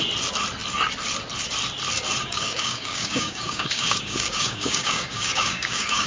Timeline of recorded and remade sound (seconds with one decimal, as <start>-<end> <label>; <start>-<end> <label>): 0.0-2.2 recorded; 2.2-6.1 remade